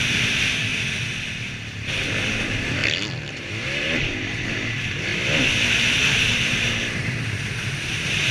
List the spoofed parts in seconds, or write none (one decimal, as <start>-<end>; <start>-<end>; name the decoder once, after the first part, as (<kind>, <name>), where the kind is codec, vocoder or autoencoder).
0.0-0.7 (vocoder, BigVGAN v2); 2.2-2.8; 3.3-5.1; 6.1-8.3